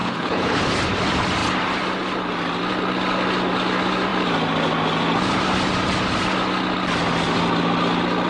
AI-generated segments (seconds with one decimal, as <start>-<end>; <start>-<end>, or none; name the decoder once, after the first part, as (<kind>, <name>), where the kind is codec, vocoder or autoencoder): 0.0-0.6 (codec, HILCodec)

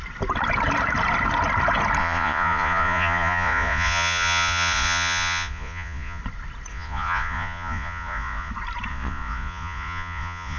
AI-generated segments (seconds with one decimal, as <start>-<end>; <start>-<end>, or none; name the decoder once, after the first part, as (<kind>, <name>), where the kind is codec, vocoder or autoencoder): 2.0-6.2 (vocoder, Vocos); 6.7-8.5; 8.9-10.6

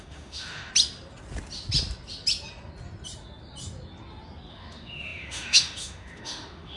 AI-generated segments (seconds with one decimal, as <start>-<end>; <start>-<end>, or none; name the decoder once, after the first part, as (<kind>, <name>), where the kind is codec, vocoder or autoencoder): 0.0-0.7 (autoencoder, DAC-VAE); 4.5-6.8